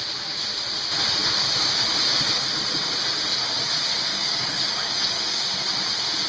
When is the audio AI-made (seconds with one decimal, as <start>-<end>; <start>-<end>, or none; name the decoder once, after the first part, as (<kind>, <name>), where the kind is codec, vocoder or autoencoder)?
4.1-5.4 (codec, DAC)